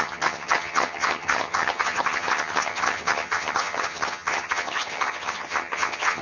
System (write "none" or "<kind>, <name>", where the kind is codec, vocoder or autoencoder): vocoder, HiFi-GAN